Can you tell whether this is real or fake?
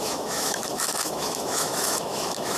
fake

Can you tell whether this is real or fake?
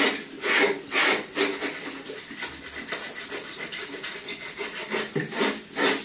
real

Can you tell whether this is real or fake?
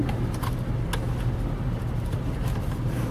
real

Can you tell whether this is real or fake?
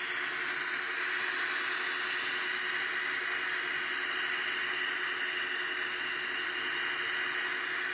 real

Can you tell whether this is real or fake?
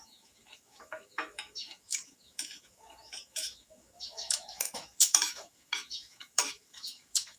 fake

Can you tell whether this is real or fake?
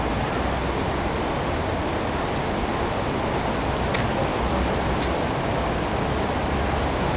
real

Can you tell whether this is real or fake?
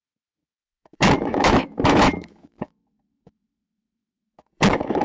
fake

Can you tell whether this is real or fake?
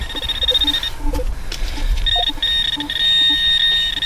real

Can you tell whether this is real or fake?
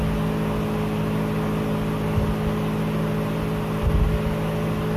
real